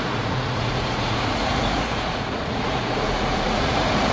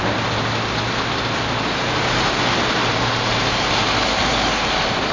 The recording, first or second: second